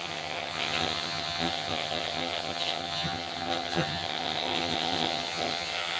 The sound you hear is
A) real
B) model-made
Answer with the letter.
B